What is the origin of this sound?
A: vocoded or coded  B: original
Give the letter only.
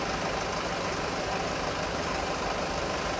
B